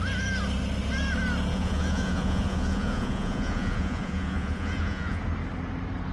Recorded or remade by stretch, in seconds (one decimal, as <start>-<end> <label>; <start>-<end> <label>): 0.0-1.5 recorded; 1.5-5.2 remade; 5.2-6.1 recorded